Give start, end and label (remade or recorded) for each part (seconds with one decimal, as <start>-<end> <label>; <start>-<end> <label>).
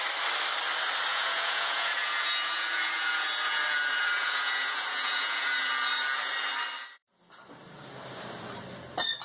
0.0-1.1 recorded; 1.1-5.7 remade; 5.7-9.2 recorded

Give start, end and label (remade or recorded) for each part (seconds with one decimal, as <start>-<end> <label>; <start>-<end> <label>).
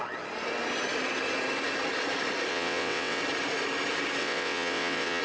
0.0-2.5 recorded; 2.5-3.2 remade; 3.2-4.2 recorded; 4.2-5.2 remade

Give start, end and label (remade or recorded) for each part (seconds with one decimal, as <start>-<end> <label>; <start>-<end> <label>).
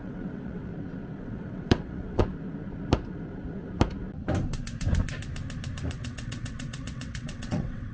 0.0-0.7 remade; 0.7-1.2 recorded; 1.2-2.2 remade; 2.2-5.9 recorded; 5.9-7.9 remade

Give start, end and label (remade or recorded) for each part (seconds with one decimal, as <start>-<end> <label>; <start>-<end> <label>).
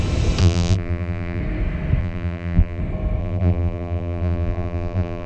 0.0-0.4 recorded; 0.4-1.4 remade; 1.4-2.0 recorded; 2.0-2.8 remade; 2.8-3.2 recorded; 3.2-5.3 remade